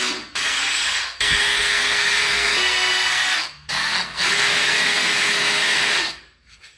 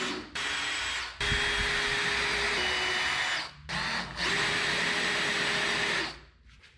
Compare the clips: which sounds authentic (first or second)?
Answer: second